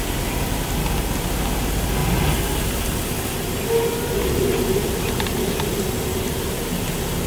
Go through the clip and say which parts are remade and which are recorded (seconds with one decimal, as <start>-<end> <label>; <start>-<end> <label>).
0.0-7.3 recorded